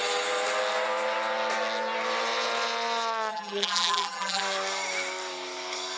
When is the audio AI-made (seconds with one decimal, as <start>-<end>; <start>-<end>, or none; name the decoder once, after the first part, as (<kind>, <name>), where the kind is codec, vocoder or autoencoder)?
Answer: 3.3-4.4 (vocoder, BigVGAN v2)

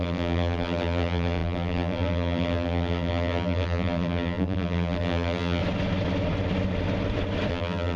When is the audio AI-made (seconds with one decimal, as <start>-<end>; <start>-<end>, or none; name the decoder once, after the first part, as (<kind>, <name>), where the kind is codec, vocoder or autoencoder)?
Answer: 0.0-5.6 (vocoder, BigVGAN v2); 7.5-8.0

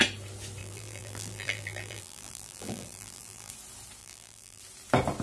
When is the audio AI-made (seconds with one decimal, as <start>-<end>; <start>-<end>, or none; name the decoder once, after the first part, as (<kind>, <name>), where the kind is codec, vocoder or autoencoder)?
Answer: 0.6-3.5 (vocoder, BigVGAN v2); 4.0-4.6

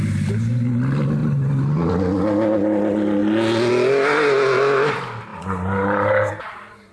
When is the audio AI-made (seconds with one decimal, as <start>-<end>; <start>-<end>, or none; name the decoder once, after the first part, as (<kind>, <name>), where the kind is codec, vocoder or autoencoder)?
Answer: 1.2-1.9 (vocoder, BigVGAN v2)

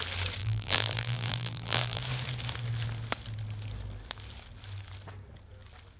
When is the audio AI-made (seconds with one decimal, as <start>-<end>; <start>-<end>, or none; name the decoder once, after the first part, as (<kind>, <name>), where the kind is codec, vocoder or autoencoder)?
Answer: 0.4-2.0 (vocoder, BigVGAN v2)

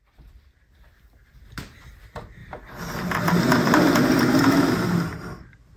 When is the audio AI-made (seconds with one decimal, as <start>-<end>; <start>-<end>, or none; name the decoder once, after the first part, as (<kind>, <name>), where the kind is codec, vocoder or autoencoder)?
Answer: 2.4-3.7 (vocoder, BigVGAN v2); 5.1-5.8